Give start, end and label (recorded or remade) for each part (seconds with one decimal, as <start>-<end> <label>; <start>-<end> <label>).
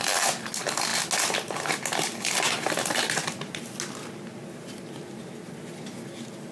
0.0-6.5 recorded